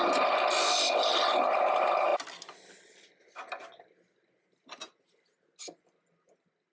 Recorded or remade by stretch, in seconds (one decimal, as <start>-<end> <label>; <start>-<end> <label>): 0.0-6.7 recorded